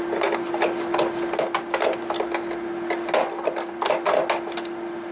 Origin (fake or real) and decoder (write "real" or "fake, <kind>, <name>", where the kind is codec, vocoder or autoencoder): real